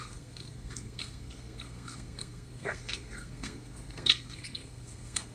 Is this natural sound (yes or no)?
no